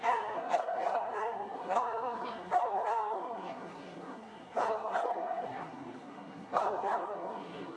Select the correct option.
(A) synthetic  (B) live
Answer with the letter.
A